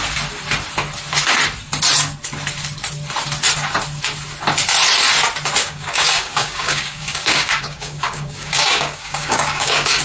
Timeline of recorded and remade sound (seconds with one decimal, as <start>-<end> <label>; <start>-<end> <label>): 0.0-5.6 recorded; 5.6-10.0 remade